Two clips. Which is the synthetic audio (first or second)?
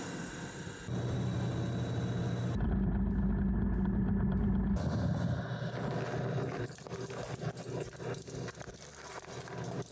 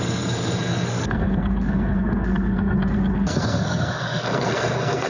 second